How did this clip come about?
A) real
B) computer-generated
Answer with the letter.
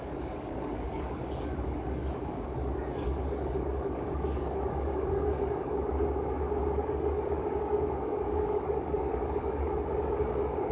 B